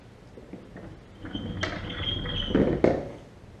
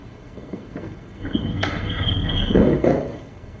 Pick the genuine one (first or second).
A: first